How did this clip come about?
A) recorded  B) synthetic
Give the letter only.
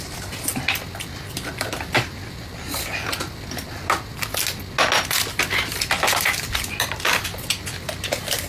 A